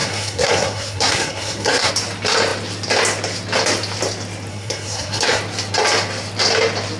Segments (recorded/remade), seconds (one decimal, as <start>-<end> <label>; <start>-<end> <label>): 0.0-1.9 remade; 1.9-4.5 recorded; 4.5-5.4 remade; 5.4-7.0 recorded